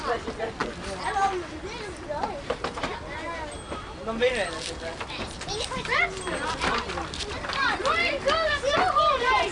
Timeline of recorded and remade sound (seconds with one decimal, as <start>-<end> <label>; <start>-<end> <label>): 0.0-9.5 recorded